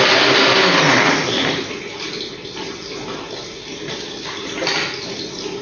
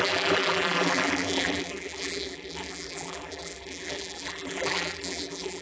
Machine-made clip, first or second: second